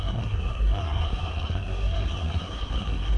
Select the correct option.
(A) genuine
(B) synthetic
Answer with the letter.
B